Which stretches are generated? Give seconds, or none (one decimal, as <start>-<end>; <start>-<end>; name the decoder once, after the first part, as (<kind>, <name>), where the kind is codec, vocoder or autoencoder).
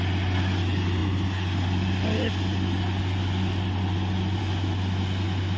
none